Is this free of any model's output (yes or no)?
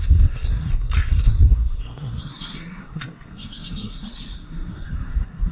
no